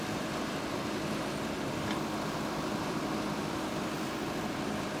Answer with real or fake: fake